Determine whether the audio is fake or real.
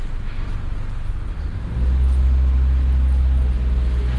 real